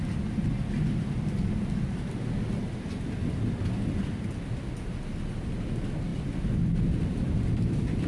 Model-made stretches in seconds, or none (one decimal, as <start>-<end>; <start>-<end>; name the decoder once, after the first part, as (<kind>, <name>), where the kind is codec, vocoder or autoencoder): 6.1-8.1 (vocoder, BigVGAN v2)